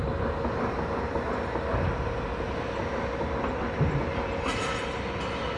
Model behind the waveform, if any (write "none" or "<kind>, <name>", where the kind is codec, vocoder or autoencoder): none